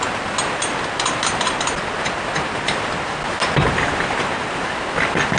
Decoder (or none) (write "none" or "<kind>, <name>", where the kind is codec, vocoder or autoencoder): none